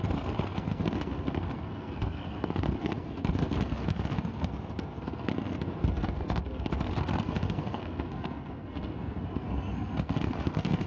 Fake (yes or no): yes